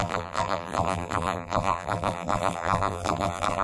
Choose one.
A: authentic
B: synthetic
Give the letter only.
B